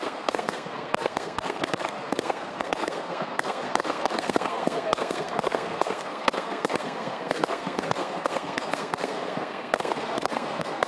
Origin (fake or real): fake